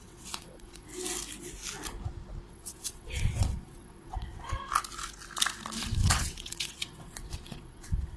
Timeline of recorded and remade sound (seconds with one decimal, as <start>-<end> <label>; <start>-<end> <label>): 0.0-0.9 remade; 0.9-2.5 recorded; 2.5-4.6 remade; 4.6-5.8 recorded; 5.8-8.2 remade